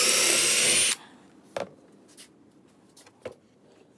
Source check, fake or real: real